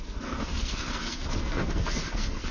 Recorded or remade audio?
remade